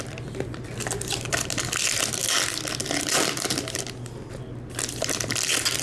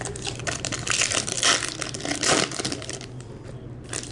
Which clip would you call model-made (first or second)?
second